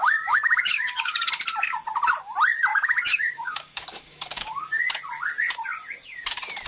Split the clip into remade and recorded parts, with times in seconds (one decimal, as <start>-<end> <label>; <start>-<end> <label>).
0.0-1.3 remade; 1.3-2.7 recorded; 2.7-4.8 remade; 4.8-6.7 recorded